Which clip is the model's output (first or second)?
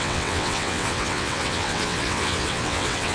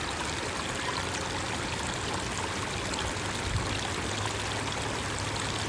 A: first